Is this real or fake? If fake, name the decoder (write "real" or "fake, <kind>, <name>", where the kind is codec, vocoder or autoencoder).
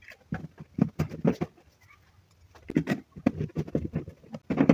real